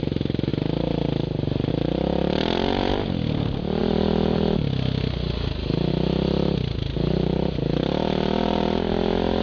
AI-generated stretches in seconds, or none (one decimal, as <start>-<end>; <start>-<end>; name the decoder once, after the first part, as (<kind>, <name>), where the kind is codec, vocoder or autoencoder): none